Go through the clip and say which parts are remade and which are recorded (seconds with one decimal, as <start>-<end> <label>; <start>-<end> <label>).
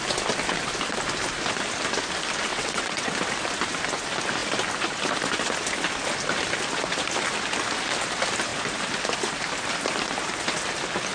0.0-2.5 recorded; 2.5-3.1 remade; 3.1-11.1 recorded